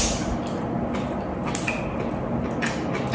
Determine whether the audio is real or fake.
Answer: real